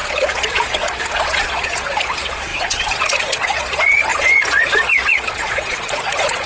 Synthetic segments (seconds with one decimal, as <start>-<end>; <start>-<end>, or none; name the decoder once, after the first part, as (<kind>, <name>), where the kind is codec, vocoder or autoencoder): 0.0-6.5 (vocoder, Vocos)